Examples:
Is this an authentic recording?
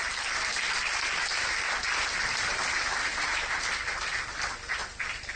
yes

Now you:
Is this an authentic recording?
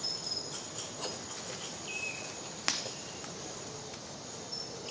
yes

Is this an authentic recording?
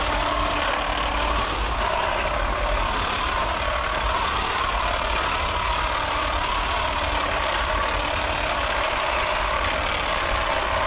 yes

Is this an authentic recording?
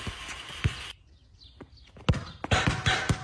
yes